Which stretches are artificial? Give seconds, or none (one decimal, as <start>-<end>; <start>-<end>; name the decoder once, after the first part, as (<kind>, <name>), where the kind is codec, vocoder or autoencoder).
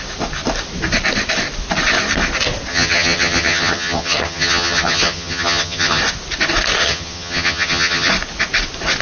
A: 2.7-6.0 (vocoder, HiFi-GAN); 6.8-8.1